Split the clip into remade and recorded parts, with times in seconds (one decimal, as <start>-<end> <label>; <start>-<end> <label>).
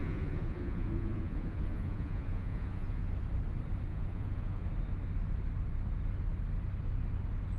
0.0-3.1 remade; 3.1-3.9 recorded; 3.9-4.7 remade; 4.7-7.6 recorded